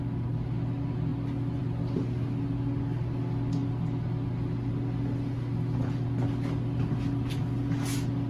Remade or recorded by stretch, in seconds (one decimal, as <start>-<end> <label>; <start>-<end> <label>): 0.0-8.3 recorded